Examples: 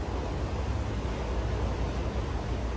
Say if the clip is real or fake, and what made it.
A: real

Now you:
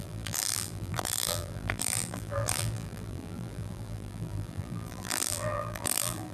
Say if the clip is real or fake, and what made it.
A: fake, vocoder, BigVGAN v2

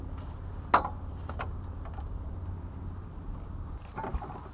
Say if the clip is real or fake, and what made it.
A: real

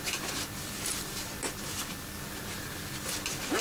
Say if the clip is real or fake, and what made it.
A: real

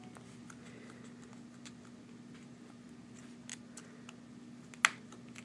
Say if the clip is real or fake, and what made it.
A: real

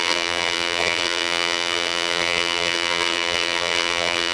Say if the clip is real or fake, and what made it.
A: fake, vocoder, BigVGAN v2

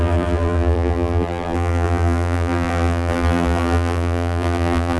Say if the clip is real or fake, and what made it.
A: fake, vocoder, BigVGAN v2